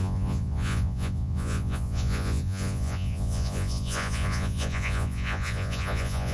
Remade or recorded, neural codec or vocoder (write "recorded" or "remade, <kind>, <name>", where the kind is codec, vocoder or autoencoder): remade, vocoder, Vocos